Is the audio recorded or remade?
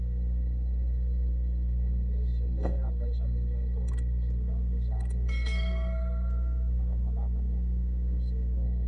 remade